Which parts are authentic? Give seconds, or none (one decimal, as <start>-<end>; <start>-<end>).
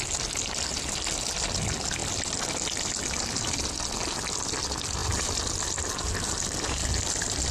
0.0-7.5